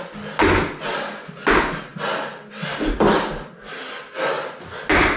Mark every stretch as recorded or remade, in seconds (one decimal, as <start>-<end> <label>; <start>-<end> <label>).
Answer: 0.0-5.2 recorded

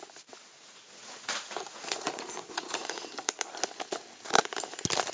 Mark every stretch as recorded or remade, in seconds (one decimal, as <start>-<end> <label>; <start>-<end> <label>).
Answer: 0.0-0.4 recorded; 0.4-3.5 remade; 3.5-5.1 recorded

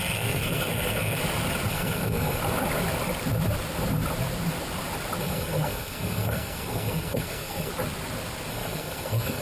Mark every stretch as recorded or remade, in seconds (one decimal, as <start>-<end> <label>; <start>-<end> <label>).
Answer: 0.0-1.2 remade; 1.2-1.7 recorded; 1.7-2.4 remade; 2.4-5.2 recorded; 5.2-7.7 remade; 7.7-8.5 recorded; 8.5-9.4 remade

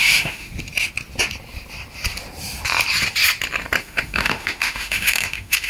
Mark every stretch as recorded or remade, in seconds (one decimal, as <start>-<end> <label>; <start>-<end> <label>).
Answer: 0.0-0.5 remade; 0.5-3.8 recorded; 3.8-5.7 remade

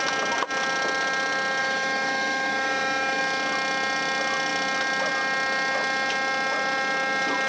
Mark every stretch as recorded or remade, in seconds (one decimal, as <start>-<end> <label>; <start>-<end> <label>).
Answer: 0.0-1.6 recorded; 1.6-3.2 remade; 3.2-7.5 recorded